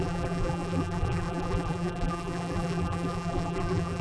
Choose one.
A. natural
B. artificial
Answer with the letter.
B